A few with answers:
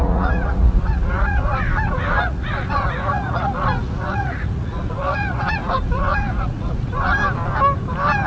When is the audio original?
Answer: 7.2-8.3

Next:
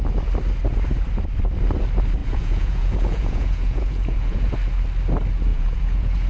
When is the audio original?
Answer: 0.0-2.2; 4.5-5.5

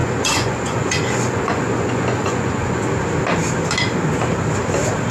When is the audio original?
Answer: 2.9-5.1

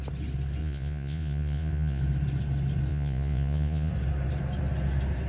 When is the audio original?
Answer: 0.0-0.6; 2.0-2.9; 3.9-5.3